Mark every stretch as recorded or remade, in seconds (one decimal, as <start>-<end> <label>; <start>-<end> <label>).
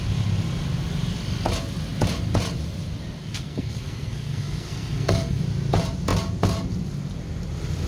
0.0-3.2 recorded; 3.2-5.4 remade; 5.4-7.9 recorded